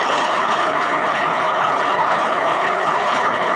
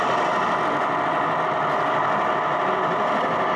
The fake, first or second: first